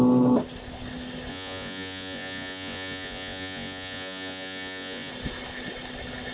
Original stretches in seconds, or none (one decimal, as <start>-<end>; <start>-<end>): 0.0-1.3; 5.1-6.3